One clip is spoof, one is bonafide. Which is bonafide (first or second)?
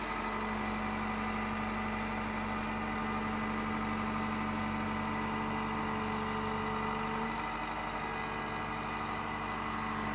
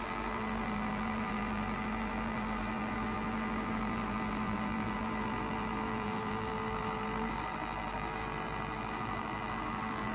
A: first